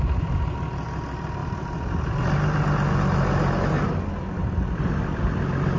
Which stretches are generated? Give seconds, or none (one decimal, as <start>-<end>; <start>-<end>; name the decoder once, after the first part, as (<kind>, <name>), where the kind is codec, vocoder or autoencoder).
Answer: 1.4-2.1 (vocoder, BigVGAN v2)